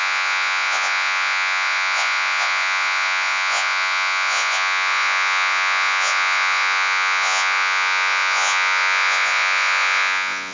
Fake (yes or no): yes